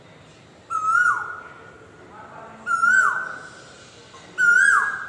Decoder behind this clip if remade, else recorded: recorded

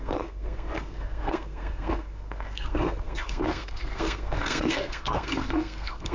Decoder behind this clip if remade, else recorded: remade, codec, SNAC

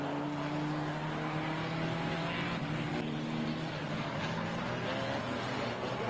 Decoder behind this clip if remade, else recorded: recorded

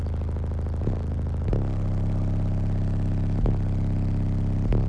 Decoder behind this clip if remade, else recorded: recorded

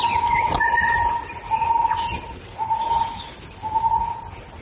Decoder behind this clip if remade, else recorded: recorded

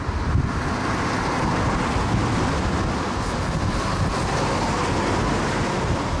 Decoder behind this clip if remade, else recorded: recorded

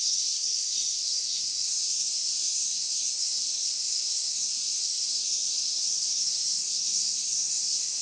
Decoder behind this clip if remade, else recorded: remade, codec, SNAC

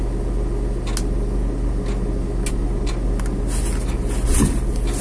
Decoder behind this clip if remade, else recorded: recorded